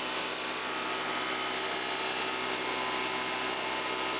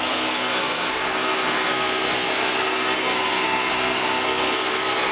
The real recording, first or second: first